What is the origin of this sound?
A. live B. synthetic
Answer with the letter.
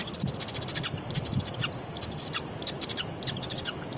A